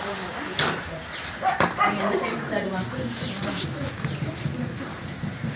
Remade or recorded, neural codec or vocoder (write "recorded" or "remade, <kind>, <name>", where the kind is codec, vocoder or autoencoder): remade, vocoder, BigVGAN v2